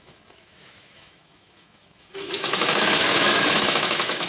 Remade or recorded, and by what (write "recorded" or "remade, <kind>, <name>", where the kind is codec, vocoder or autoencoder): remade, autoencoder, DAC-VAE